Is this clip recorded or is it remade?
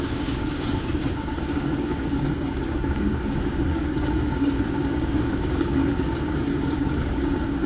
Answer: remade